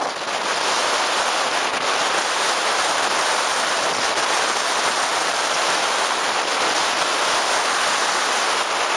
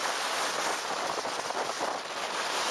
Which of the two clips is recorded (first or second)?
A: first